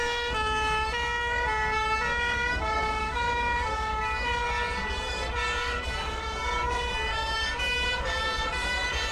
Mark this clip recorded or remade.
remade